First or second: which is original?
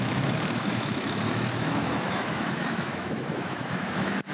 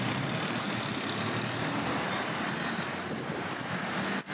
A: second